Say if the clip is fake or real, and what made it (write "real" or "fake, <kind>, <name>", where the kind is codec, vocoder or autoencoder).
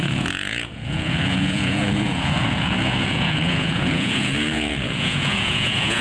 fake, vocoder, Vocos